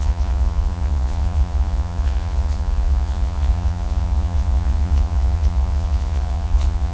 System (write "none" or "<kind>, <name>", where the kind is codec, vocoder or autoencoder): vocoder, Vocos